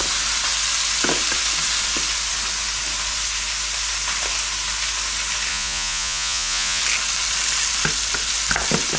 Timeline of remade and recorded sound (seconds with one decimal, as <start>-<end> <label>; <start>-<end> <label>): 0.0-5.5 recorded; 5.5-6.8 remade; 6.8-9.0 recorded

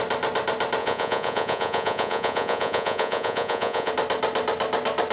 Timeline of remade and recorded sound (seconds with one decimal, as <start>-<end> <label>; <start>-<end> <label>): 0.0-0.8 recorded; 0.8-3.9 remade; 3.9-5.1 recorded

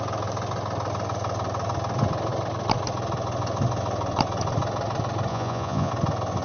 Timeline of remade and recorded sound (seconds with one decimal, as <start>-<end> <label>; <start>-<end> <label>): 0.0-5.3 recorded; 5.3-5.9 remade; 5.9-6.4 recorded